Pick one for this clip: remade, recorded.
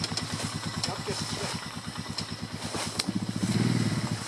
recorded